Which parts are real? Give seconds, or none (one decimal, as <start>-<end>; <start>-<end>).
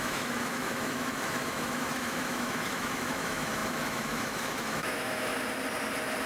5.3-6.3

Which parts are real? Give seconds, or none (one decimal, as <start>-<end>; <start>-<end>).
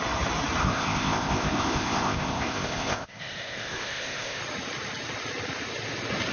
0.0-0.6; 4.4-6.3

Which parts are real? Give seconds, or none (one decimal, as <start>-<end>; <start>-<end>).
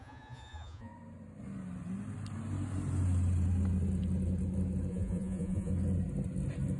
0.9-4.9; 5.7-6.8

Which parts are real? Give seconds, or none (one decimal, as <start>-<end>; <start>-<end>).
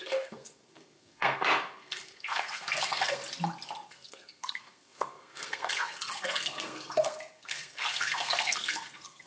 3.2-3.9